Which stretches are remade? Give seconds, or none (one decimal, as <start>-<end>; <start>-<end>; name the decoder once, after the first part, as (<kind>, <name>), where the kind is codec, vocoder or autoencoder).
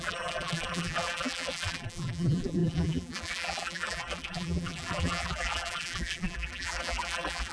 0.0-7.5 (vocoder, BigVGAN v2)